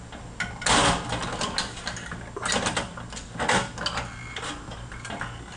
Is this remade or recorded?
recorded